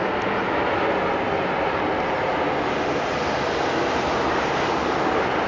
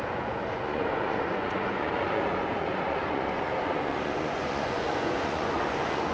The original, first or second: first